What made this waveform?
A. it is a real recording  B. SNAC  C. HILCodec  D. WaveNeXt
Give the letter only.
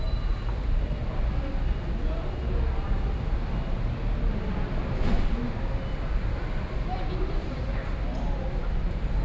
A